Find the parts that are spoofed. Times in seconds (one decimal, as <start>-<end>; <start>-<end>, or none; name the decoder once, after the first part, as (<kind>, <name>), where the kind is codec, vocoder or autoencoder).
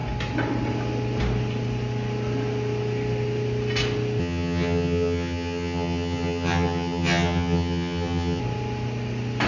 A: 4.2-8.4 (vocoder, HiFi-GAN)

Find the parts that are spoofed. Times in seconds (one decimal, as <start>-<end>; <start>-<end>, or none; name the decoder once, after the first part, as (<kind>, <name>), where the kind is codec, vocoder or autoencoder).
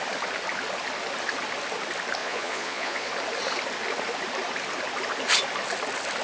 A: 2.2-3.1 (vocoder, Vocos)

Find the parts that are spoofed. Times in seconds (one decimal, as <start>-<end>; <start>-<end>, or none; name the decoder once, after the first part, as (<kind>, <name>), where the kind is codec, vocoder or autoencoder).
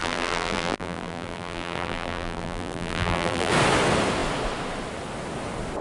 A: 0.0-3.5 (vocoder, BigVGAN v2)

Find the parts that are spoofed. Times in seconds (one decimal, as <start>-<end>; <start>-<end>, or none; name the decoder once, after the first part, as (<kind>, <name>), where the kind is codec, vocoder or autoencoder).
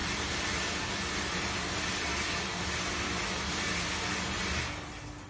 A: none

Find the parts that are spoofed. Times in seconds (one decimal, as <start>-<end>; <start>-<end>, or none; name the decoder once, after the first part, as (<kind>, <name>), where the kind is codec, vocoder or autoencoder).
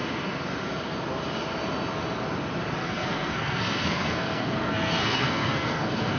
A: 2.8-6.2 (codec, SNAC)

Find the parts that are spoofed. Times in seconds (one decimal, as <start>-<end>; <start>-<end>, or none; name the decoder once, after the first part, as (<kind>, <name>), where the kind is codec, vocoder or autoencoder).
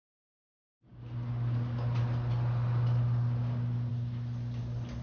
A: none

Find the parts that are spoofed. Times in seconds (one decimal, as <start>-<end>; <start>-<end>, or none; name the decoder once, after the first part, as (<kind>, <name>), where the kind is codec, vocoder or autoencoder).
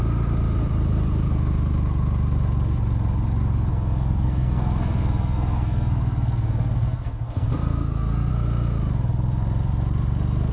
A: 3.7-8.3 (codec, SNAC)